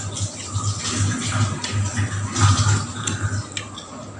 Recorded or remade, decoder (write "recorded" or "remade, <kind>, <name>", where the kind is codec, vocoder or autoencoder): recorded